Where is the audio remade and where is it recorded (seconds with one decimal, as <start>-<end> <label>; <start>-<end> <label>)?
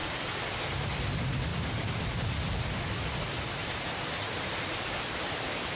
0.0-0.7 remade; 0.7-3.6 recorded; 3.6-5.8 remade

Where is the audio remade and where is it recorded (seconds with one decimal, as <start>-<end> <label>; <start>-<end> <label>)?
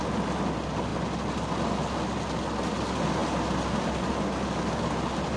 0.0-5.4 recorded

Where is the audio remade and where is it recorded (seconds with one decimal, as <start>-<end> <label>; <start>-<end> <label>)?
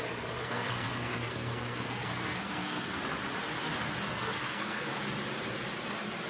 0.0-0.4 recorded; 0.4-3.0 remade; 3.0-4.1 recorded; 4.1-5.0 remade; 5.0-6.3 recorded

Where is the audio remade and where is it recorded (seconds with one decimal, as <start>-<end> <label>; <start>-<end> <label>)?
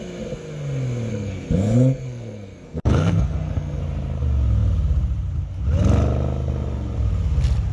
0.0-1.1 recorded; 1.1-3.8 remade; 3.8-7.7 recorded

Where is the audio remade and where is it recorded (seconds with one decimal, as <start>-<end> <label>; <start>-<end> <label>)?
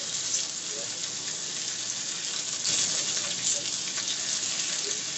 0.0-5.2 recorded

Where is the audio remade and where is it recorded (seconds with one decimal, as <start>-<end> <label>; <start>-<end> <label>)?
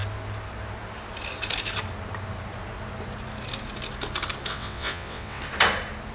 0.0-4.5 recorded; 4.5-5.4 remade; 5.4-6.1 recorded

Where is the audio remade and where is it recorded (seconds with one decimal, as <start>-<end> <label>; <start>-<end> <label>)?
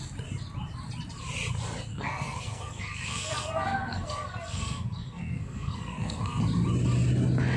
0.0-1.9 recorded; 1.9-6.4 remade; 6.4-7.6 recorded